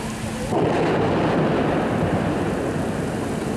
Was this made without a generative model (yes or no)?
yes